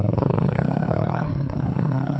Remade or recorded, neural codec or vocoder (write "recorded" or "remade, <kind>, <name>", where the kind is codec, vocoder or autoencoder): remade, codec, SNAC